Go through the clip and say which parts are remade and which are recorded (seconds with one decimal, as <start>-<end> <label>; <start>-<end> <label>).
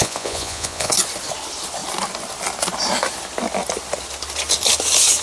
0.0-0.9 remade; 0.9-5.2 recorded